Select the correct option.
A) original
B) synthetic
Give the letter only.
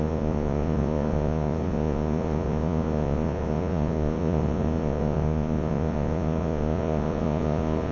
B